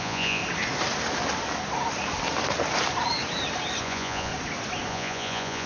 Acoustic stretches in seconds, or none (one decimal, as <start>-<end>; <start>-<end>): 0.4-3.8; 4.3-4.9